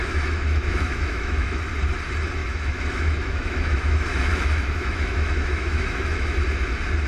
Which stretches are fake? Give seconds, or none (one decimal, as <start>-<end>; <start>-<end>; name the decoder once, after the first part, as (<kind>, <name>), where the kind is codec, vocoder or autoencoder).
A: 0.0-1.6 (autoencoder, DAC-VAE); 2.4-6.4